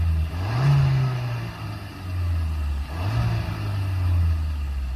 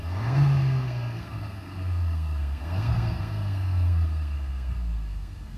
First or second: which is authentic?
first